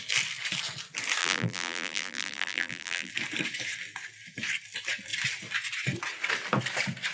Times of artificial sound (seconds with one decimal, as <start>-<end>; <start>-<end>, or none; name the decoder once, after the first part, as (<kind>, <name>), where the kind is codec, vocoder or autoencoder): 1.2-3.1 (vocoder, BigVGAN v2)